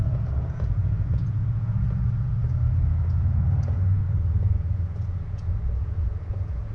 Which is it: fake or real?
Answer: fake